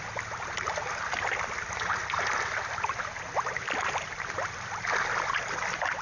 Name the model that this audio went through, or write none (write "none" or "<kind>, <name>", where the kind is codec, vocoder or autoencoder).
none